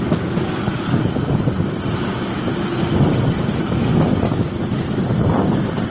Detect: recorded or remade recorded